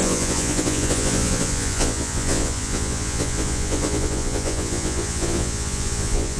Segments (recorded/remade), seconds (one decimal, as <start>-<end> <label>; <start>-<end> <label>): 0.0-6.4 remade